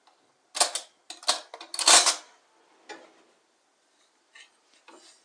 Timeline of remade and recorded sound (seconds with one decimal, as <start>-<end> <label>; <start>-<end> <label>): 0.0-5.2 recorded